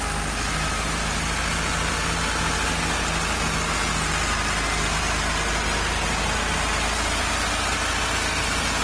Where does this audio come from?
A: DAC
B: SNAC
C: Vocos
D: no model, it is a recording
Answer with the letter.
D